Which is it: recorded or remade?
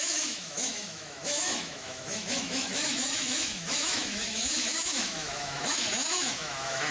remade